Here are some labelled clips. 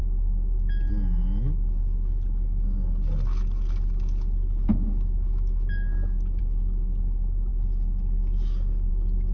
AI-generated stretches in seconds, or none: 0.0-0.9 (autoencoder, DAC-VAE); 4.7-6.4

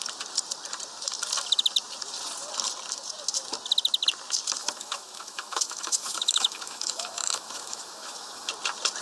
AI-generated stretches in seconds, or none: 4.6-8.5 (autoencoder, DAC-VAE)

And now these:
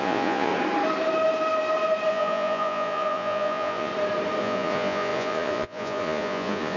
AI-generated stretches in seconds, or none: 0.0-0.5 (vocoder, Vocos); 2.1-3.9; 4.4-6.8

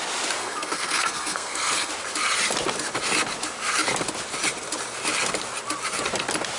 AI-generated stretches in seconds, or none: 0.4-1.9 (codec, SNAC)